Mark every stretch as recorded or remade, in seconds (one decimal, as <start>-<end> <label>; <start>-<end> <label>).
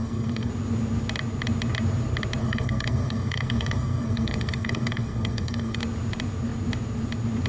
0.0-0.5 remade; 0.5-2.4 recorded; 2.4-5.8 remade; 5.8-7.5 recorded